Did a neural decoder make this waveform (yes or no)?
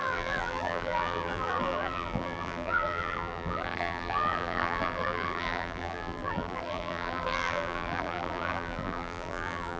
yes